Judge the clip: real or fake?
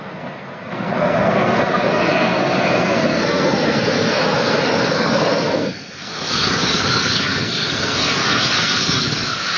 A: fake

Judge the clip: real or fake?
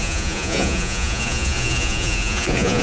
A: fake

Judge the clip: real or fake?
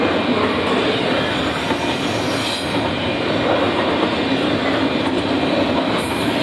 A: real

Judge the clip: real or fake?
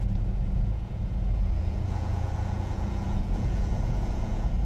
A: fake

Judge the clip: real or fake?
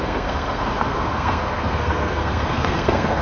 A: fake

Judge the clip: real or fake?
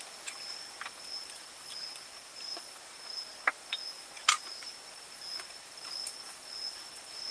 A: real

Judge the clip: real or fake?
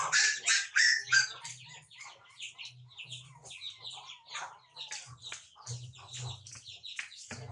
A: real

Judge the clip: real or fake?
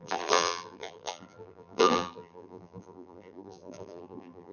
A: fake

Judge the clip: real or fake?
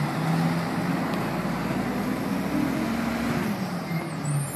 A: real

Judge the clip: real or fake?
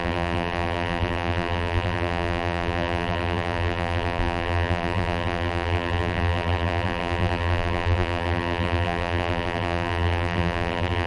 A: fake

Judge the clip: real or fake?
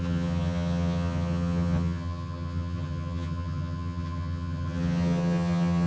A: fake